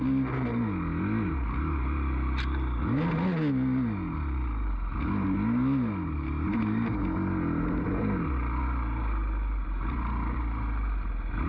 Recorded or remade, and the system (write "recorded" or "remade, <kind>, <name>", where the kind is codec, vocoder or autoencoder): recorded